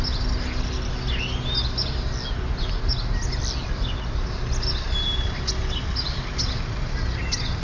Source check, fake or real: real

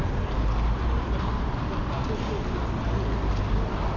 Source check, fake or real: real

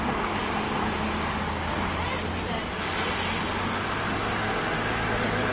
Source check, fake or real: real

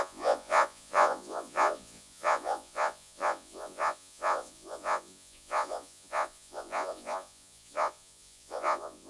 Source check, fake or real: fake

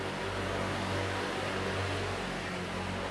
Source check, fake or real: real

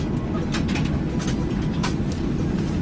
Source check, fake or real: real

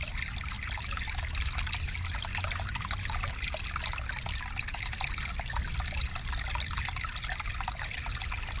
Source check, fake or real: real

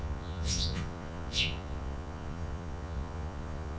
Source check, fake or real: fake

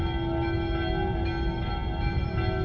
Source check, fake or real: real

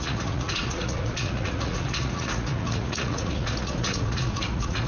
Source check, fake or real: fake